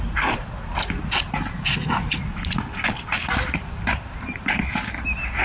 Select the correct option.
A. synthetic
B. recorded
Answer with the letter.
B